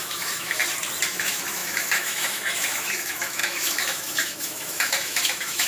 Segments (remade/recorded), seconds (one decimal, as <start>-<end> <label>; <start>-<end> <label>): 0.0-0.6 remade; 0.6-1.1 recorded; 1.1-5.7 remade